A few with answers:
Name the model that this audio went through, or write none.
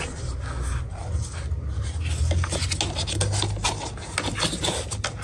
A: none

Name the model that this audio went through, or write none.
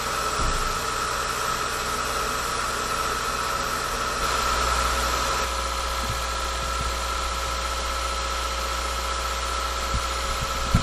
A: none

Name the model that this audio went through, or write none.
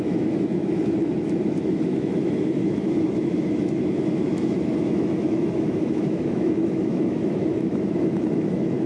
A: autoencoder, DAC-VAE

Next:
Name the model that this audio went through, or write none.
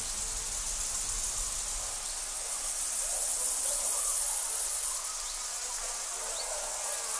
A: none